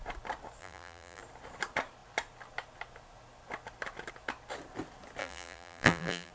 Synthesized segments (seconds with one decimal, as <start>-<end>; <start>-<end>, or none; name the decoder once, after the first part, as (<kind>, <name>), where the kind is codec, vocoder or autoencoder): 0.6-1.2 (vocoder, BigVGAN v2); 5.2-6.3